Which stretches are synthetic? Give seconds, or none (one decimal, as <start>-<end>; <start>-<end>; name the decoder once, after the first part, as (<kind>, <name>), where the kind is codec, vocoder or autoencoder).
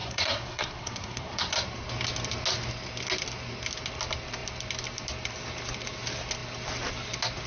0.0-1.5 (codec, SNAC)